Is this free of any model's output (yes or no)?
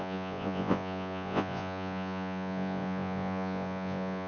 no